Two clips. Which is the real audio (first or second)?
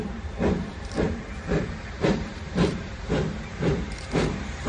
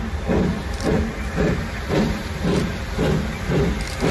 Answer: second